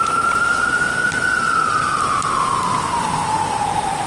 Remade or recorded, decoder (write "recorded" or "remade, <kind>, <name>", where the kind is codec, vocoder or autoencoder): recorded